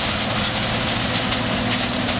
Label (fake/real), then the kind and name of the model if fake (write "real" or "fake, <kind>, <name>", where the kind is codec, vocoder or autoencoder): real